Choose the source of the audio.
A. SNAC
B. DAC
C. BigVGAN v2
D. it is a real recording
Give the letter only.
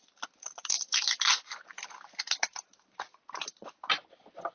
D